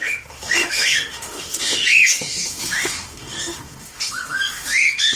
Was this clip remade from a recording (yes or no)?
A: yes